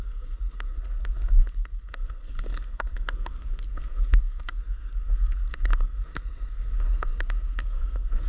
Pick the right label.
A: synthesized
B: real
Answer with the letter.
A